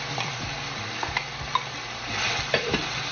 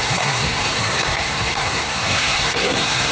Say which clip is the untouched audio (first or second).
first